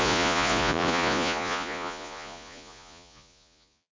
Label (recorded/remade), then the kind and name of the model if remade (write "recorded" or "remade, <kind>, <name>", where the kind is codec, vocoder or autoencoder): remade, vocoder, Vocos